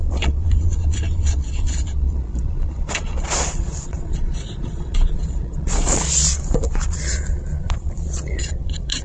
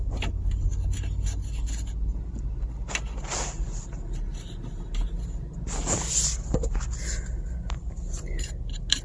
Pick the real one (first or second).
second